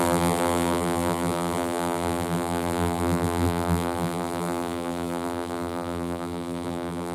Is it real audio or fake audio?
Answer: fake